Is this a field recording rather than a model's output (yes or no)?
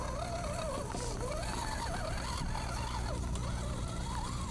yes